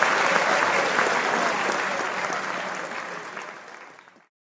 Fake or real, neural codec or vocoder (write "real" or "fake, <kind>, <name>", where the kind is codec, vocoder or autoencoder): real